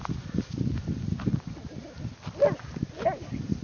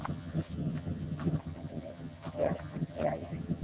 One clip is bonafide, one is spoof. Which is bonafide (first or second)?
first